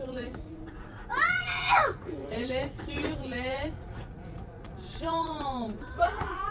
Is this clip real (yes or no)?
no